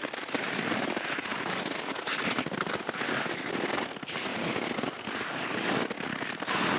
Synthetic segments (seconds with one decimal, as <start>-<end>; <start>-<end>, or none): none

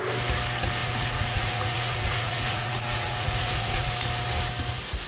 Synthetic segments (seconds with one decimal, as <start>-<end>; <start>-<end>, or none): 0.8-3.9

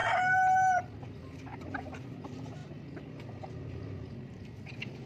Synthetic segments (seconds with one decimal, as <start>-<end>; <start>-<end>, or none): none

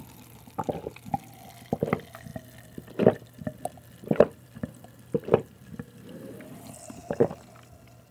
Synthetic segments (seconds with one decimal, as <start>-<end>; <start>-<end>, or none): 0.0-2.3; 4.1-7.0